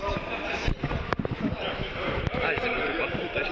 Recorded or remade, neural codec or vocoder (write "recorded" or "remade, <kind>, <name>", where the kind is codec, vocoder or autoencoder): recorded